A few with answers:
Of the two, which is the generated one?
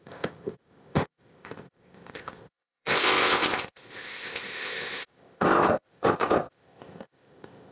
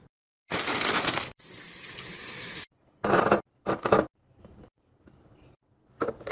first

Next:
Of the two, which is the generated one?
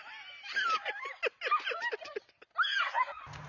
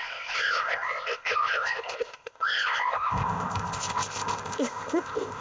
second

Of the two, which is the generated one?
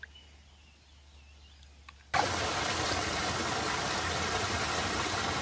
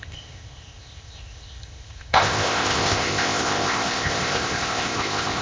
second